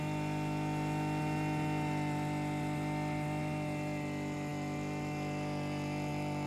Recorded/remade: recorded